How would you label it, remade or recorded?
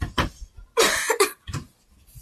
recorded